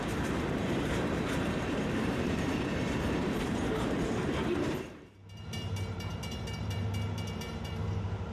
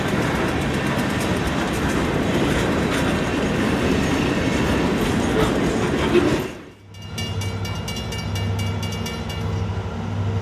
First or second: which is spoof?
first